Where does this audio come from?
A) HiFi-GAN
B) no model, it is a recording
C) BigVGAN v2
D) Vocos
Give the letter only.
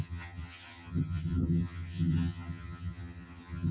A